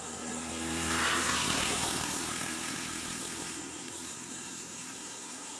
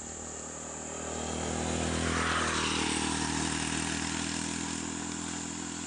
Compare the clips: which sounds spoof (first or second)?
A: first